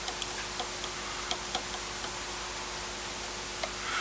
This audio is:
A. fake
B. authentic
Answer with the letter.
B